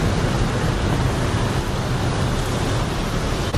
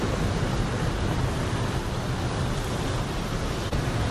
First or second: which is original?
first